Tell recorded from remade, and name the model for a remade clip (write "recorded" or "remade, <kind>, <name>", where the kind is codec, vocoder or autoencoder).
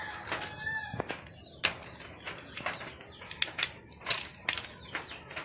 recorded